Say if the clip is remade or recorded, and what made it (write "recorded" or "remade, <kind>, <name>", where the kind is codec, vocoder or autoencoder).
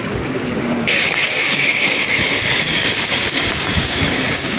remade, codec, DAC